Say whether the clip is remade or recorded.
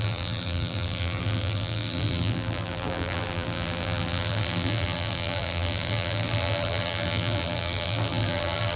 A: remade